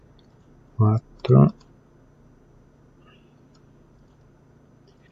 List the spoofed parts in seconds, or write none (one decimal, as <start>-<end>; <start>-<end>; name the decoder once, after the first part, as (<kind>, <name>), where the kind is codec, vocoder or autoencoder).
none